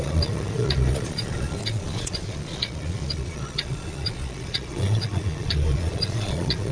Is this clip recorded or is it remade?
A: remade